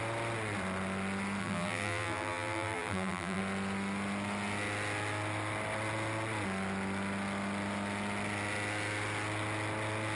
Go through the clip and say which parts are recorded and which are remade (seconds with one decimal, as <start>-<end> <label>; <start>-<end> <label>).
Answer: 0.0-1.4 recorded; 1.4-3.4 remade; 3.4-10.2 recorded